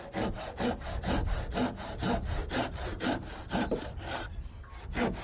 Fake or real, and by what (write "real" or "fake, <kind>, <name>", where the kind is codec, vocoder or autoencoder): real